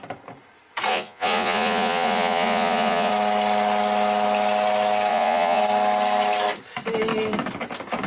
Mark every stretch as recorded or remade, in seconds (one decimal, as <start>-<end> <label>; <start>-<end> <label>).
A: 0.0-0.9 recorded; 0.9-3.1 remade; 3.1-5.1 recorded; 5.1-5.6 remade; 5.6-8.1 recorded